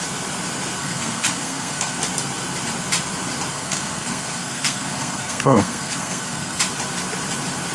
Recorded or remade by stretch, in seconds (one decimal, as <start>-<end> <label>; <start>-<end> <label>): 0.0-0.8 recorded; 0.8-2.0 remade; 2.0-3.5 recorded; 3.5-6.6 remade; 6.6-7.7 recorded